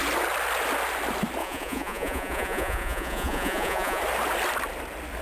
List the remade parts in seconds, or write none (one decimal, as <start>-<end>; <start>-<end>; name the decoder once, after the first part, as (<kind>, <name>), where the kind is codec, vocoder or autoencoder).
1.4-4.0 (vocoder, Vocos)